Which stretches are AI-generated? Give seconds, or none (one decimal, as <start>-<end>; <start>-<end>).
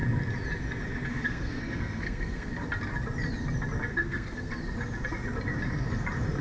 1.1-2.5; 3.9-4.5